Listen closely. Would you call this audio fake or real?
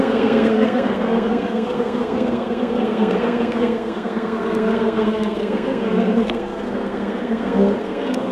fake